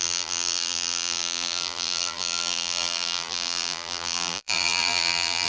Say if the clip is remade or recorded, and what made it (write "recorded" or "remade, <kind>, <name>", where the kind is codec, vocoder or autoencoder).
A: remade, vocoder, BigVGAN v2